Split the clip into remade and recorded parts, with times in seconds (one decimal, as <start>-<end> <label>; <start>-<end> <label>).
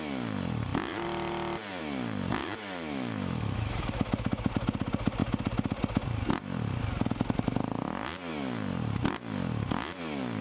0.0-2.4 recorded; 2.4-4.5 remade; 4.5-10.4 recorded